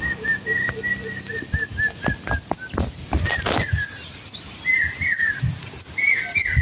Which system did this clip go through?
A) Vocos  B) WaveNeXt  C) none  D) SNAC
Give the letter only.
C